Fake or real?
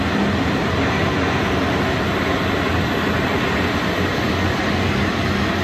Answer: real